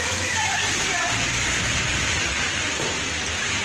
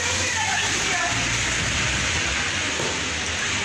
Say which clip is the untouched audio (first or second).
second